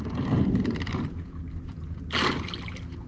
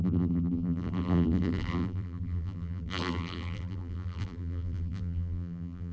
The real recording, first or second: first